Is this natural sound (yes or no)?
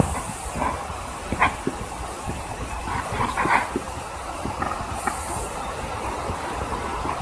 no